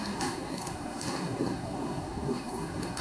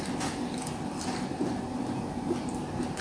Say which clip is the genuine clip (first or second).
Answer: second